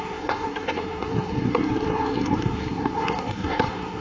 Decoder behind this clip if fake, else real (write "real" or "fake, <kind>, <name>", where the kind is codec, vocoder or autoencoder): fake, codec, SNAC